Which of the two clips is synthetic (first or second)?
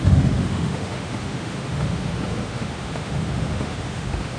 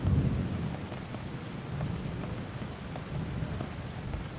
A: first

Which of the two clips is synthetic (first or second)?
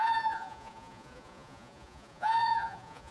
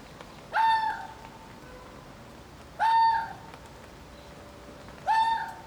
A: first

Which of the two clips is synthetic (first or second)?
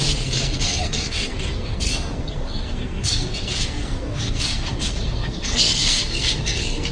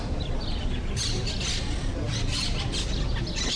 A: first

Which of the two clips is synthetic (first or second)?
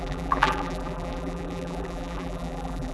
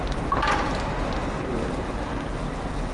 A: first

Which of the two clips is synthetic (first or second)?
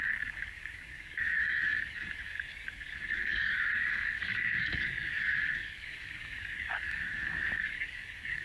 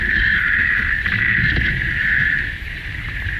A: first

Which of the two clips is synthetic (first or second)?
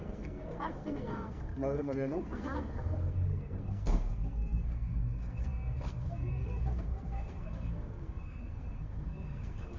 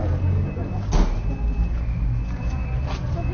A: first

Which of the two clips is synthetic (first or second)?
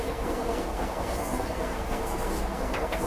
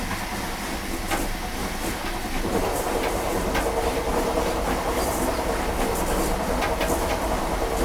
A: first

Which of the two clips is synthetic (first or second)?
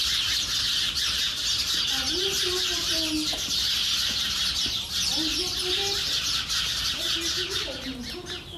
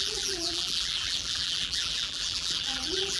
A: second